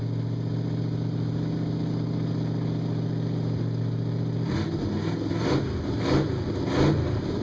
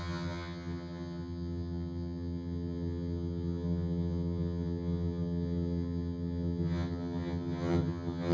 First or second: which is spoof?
second